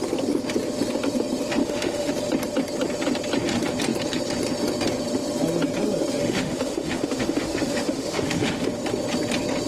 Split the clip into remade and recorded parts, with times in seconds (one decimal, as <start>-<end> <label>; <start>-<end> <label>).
0.0-1.6 recorded; 1.6-2.1 remade; 2.1-6.2 recorded; 6.2-8.6 remade; 8.6-9.7 recorded